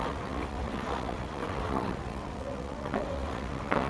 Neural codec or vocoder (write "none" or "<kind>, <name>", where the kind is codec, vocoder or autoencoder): vocoder, WaveNeXt